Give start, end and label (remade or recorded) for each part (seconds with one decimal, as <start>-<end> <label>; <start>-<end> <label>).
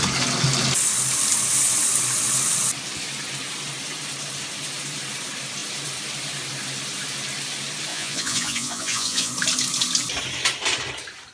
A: 0.0-7.9 recorded; 7.9-9.3 remade; 9.3-11.3 recorded